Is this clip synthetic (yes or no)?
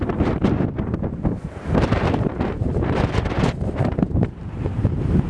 yes